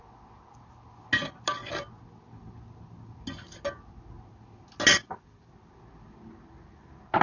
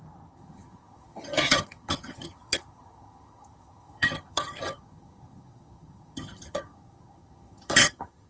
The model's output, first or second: second